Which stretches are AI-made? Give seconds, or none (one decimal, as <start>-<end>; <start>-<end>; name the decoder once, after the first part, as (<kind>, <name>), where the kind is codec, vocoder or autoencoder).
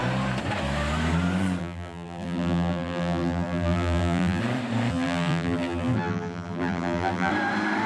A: 1.6-4.4 (vocoder, BigVGAN v2); 4.9-7.3